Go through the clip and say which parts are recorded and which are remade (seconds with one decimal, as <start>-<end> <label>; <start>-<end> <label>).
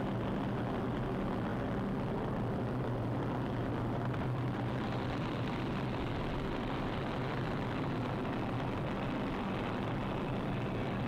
0.0-3.6 recorded; 3.6-6.1 remade; 6.1-11.1 recorded